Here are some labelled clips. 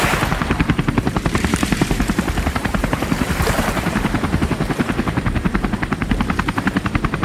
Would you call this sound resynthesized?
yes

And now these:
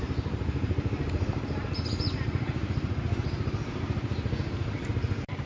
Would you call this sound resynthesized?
yes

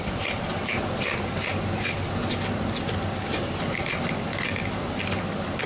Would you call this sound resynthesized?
no